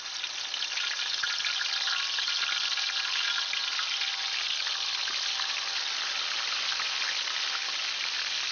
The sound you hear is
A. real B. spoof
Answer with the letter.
A